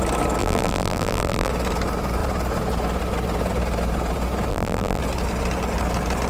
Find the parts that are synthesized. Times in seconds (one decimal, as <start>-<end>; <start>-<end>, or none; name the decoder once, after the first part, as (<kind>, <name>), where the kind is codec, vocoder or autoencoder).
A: 0.4-1.5 (vocoder, BigVGAN v2); 4.5-5.0